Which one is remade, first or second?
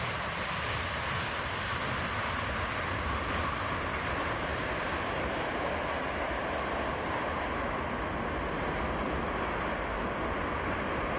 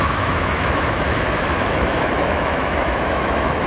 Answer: second